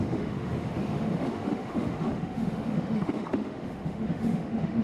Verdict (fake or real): fake